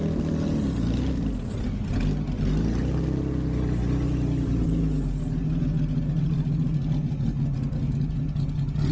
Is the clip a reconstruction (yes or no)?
no